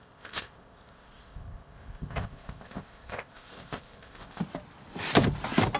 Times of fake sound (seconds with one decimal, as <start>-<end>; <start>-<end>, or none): 0.0-4.4